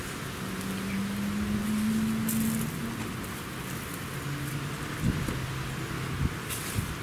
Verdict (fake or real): real